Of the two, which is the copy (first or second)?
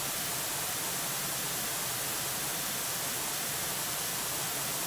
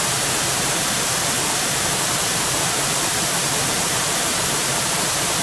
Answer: second